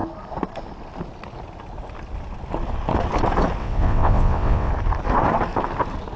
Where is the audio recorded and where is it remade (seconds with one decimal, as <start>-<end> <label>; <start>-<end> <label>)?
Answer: 0.0-3.6 recorded; 3.6-4.7 remade; 4.7-6.2 recorded